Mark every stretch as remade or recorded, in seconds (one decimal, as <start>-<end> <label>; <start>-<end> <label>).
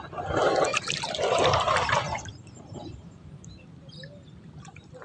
0.0-0.7 recorded; 0.7-3.7 remade; 3.7-5.0 recorded